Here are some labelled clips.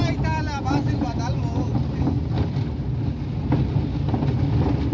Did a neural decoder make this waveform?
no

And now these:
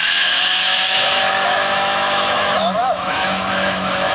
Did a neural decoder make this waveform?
yes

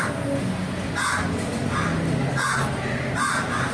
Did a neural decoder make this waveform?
no